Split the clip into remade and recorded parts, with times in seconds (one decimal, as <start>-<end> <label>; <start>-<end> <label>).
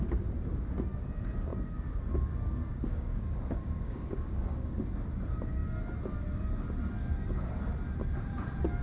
0.0-2.7 recorded; 2.7-4.8 remade; 4.8-8.8 recorded